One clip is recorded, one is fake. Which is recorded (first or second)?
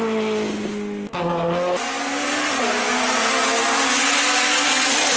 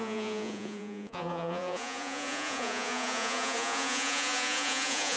first